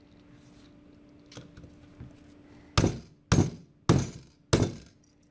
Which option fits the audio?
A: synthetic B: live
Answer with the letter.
B